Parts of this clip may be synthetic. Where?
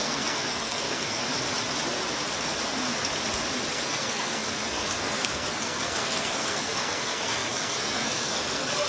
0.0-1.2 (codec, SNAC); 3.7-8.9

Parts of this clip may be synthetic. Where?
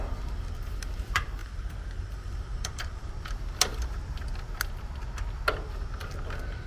1.4-3.1 (vocoder, BigVGAN v2)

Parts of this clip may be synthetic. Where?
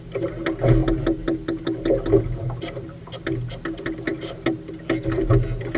none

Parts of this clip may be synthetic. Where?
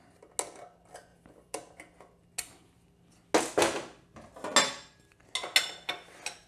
none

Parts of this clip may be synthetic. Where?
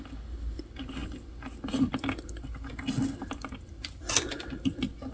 none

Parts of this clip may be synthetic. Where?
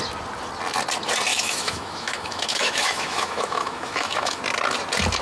1.3-4.4 (autoencoder, DAC-VAE)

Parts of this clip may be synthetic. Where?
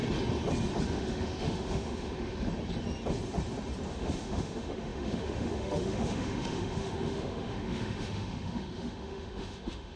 0.9-2.5 (autoencoder, DAC-VAE); 3.9-10.0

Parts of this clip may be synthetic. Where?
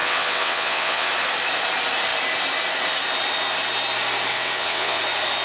0.0-1.1 (vocoder, WaveNeXt); 4.3-5.0